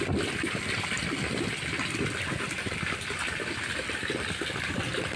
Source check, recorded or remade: recorded